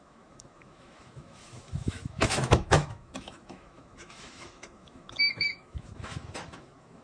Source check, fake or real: fake